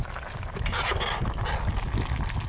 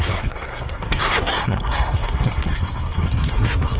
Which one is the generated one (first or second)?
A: second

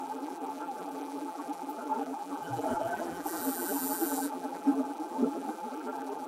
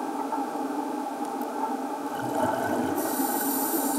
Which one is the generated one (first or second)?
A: first